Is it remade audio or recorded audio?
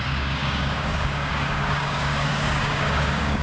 remade